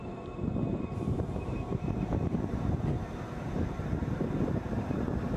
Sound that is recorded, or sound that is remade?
remade